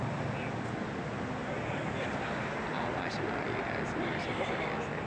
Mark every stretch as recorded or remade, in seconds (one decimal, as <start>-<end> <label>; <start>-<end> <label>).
0.0-5.1 recorded